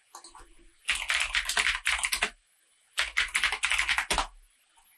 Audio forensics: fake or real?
real